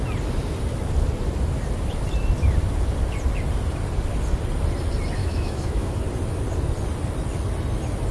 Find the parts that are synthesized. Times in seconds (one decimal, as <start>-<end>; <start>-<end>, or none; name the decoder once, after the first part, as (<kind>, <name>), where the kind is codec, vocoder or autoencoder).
5.2-5.9 (autoencoder, DAC-VAE)